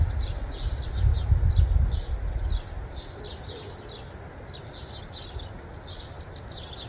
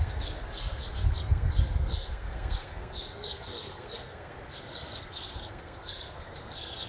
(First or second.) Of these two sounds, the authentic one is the first